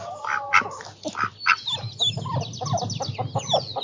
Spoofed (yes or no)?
no